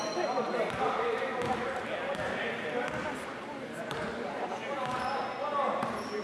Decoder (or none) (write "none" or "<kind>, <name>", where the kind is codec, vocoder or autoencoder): none